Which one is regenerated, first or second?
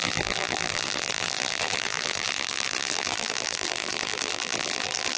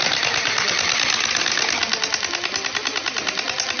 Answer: first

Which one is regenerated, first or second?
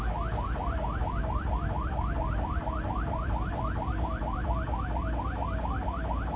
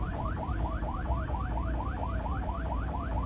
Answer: second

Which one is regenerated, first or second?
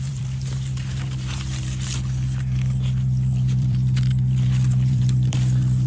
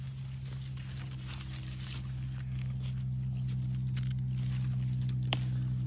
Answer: first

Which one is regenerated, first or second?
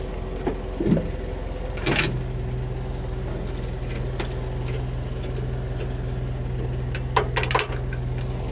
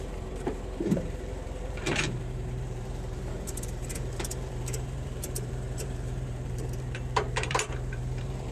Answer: second